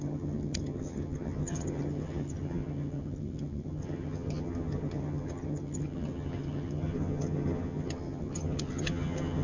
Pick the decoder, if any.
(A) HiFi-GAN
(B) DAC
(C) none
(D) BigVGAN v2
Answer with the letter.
A